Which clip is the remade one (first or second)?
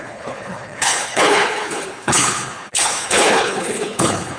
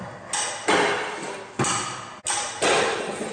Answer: first